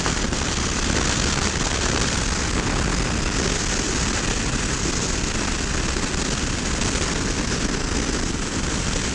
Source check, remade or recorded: recorded